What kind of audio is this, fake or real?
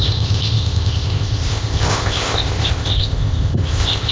fake